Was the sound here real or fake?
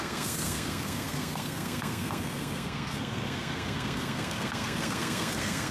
fake